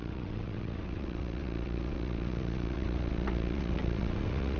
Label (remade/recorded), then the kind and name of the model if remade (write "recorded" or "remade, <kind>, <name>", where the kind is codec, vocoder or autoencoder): remade, vocoder, WaveNeXt